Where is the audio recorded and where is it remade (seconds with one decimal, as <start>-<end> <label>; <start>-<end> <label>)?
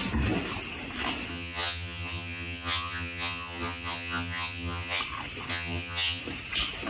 0.0-1.3 recorded; 1.3-5.0 remade; 5.0-5.5 recorded; 5.5-6.2 remade; 6.2-6.9 recorded